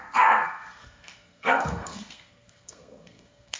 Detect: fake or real fake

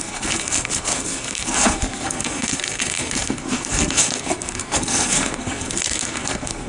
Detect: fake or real fake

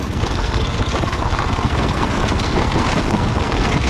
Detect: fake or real fake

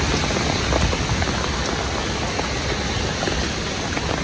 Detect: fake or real real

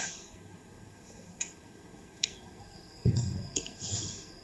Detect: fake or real fake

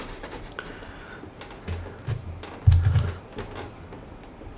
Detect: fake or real real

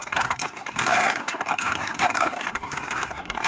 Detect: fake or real fake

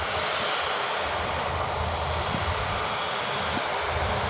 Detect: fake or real real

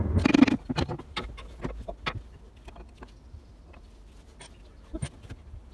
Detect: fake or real real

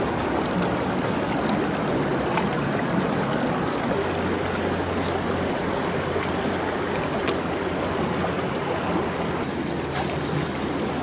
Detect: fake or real real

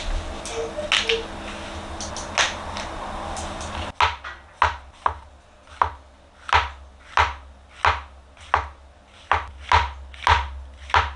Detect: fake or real real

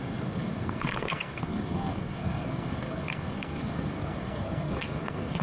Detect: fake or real fake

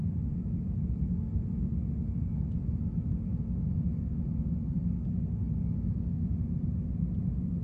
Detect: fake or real real